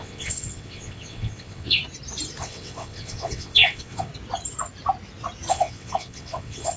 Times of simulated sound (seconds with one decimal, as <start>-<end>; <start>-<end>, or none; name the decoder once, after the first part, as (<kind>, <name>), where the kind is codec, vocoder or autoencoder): 0.0-1.8 (vocoder, WaveNeXt); 2.4-4.1; 5.5-6.8